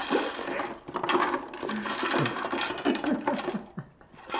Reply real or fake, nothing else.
real